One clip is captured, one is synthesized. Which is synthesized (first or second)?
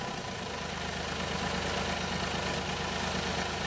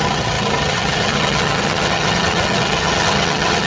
second